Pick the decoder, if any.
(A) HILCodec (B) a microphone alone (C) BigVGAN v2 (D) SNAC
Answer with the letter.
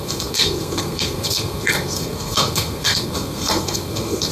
D